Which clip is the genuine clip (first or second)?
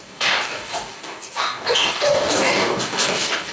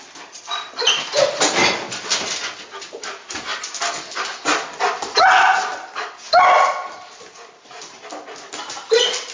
second